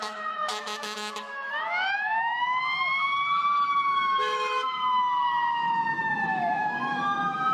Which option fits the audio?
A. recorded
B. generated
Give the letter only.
B